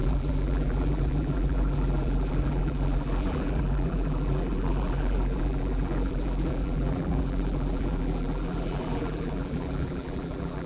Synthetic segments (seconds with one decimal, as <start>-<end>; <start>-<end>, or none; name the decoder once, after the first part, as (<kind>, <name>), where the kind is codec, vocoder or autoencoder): 0.0-10.7 (vocoder, BigVGAN v2)